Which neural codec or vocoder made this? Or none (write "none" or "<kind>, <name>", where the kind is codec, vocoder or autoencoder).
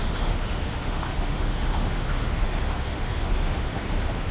autoencoder, DAC-VAE